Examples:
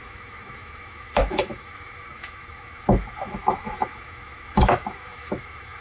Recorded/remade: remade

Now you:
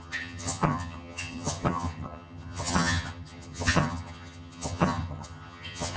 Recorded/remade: remade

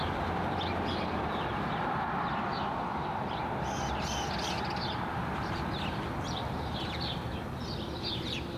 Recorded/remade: remade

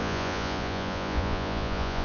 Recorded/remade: remade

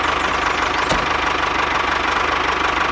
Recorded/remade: recorded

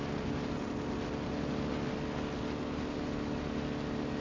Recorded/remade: recorded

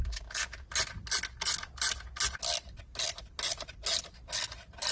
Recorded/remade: recorded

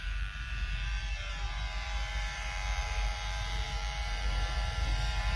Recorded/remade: remade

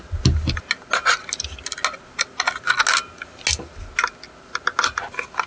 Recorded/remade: recorded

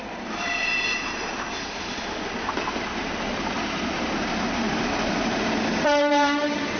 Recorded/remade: remade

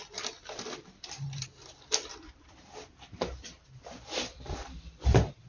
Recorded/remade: remade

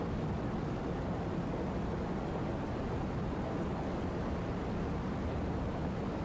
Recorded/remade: recorded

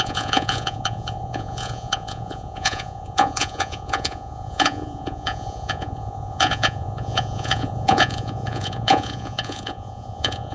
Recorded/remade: remade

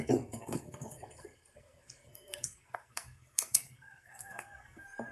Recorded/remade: remade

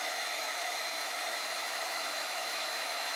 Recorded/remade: remade